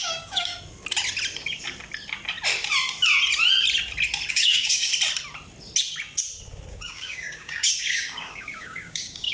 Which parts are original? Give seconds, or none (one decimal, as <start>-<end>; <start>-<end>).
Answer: 0.5-4.3; 4.9-6.7